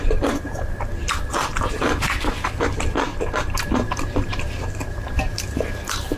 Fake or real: fake